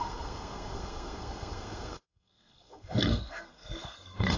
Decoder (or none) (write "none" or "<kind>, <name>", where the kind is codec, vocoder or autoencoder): codec, SNAC